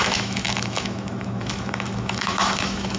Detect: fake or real fake